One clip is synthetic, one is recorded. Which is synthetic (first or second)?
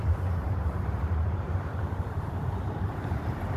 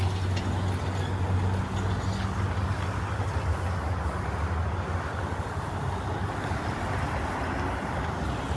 first